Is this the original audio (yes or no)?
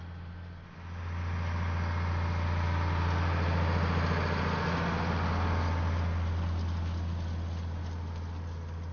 yes